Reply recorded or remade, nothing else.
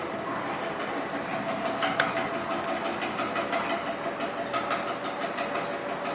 recorded